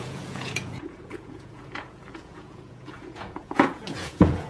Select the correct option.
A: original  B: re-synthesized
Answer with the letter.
B